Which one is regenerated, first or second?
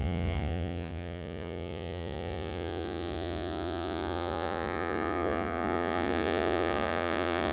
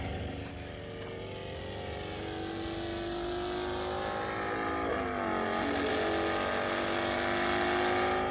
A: first